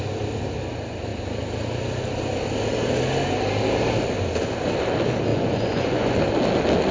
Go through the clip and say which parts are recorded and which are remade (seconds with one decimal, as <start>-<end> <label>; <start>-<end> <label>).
0.0-5.3 recorded; 5.3-6.2 remade; 6.2-6.9 recorded